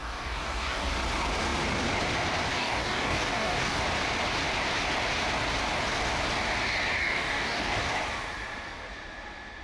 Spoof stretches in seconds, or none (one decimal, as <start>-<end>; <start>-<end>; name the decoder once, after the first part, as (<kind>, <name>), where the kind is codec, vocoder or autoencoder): 0.0-0.9 (codec, DAC); 2.5-3.8; 7.0-7.8

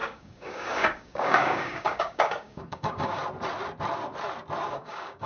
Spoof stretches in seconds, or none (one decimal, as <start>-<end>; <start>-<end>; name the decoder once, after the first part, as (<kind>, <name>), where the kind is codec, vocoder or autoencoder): 0.0-3.2 (codec, DAC); 4.7-5.3

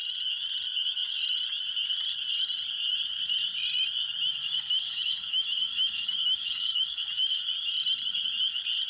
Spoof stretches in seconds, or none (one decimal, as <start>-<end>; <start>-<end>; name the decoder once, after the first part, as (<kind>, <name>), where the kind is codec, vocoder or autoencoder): 4.4-7.4 (codec, DAC)

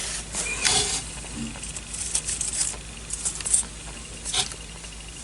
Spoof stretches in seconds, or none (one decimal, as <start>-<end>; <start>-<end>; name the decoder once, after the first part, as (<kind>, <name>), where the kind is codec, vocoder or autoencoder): none

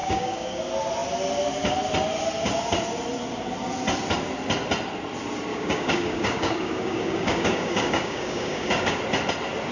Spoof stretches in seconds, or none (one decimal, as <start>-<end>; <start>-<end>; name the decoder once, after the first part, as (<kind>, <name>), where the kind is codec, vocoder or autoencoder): 0.0-0.6 (codec, DAC); 5.5-9.0